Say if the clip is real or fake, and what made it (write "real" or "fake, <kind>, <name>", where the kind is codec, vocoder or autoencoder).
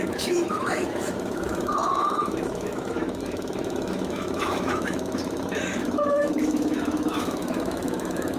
fake, autoencoder, DAC-VAE